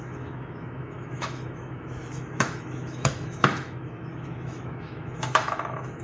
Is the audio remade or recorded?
remade